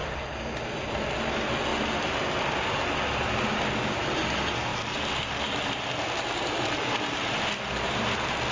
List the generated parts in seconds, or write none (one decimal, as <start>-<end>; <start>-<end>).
0.7-4.7; 5.4-8.5